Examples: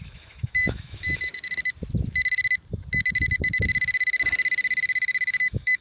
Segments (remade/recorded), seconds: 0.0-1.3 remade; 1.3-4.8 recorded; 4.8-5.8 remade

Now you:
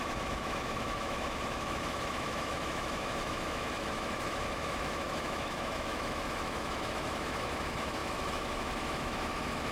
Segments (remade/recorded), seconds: 0.0-9.7 remade

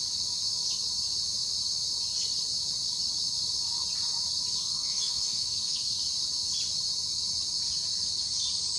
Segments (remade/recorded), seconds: 0.0-4.6 recorded; 4.6-6.0 remade; 6.0-8.8 recorded